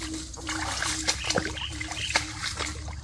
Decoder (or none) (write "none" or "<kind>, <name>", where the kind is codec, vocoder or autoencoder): none